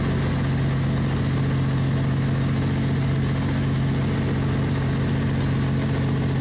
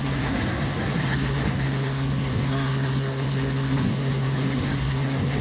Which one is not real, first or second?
second